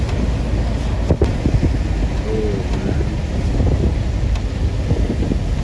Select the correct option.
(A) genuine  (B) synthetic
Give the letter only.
A